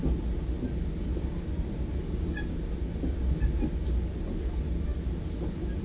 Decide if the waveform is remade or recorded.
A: recorded